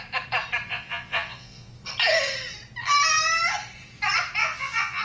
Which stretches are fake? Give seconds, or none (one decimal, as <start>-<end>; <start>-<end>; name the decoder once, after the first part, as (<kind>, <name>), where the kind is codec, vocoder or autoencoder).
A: 0.7-1.7 (vocoder, Vocos); 4.4-5.0